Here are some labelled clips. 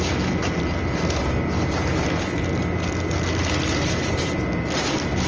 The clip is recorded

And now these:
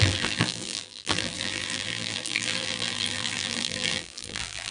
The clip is remade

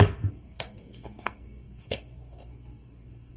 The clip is remade